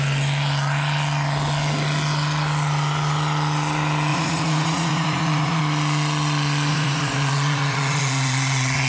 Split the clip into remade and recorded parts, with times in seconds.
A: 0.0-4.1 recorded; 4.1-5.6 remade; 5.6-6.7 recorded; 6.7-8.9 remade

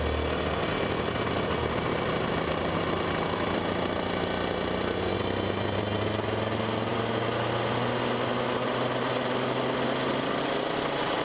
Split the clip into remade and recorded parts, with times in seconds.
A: 0.0-11.2 recorded